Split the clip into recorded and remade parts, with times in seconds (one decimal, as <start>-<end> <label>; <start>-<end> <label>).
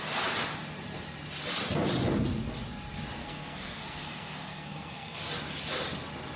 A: 0.0-3.2 recorded; 3.2-5.2 remade; 5.2-6.4 recorded